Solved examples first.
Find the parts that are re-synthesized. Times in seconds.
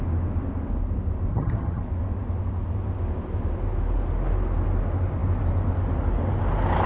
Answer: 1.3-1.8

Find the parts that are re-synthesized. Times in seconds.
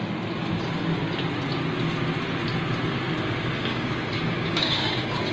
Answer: 3.7-5.3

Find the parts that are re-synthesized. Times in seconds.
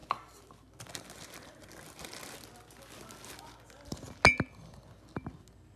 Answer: none